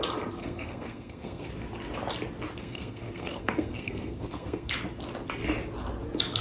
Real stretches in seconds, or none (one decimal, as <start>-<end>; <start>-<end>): 0.0-0.4; 1.5-2.6; 4.7-6.4